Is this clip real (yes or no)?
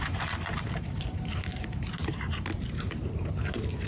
no